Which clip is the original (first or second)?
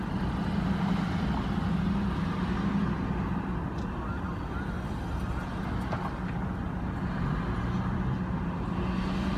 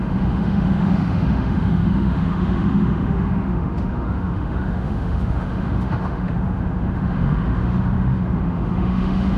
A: first